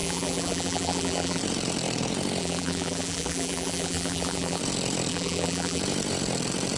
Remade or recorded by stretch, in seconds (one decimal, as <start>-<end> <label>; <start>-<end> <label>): 0.0-1.4 remade; 1.4-2.4 recorded; 2.4-4.6 remade; 4.6-5.1 recorded; 5.1-5.8 remade; 5.8-6.8 recorded